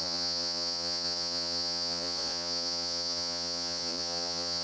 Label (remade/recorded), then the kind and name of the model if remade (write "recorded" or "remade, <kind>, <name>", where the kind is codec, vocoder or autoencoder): remade, vocoder, Vocos